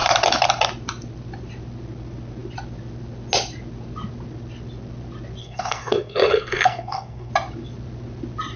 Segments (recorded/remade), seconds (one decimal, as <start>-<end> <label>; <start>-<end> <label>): 0.0-5.4 recorded; 5.4-7.3 remade; 7.3-8.6 recorded